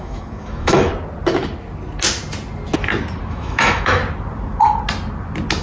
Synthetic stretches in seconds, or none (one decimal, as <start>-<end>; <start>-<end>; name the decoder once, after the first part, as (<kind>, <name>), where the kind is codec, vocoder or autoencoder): 0.0-0.9 (autoencoder, DAC-VAE); 3.3-4.0